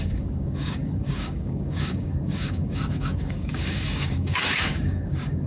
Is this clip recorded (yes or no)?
no